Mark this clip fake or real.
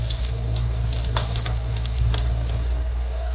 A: fake